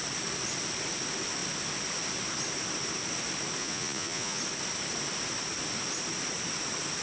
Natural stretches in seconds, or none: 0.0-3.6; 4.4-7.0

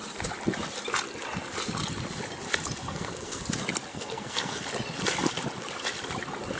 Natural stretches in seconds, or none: 0.0-2.8; 3.4-3.9; 4.7-6.6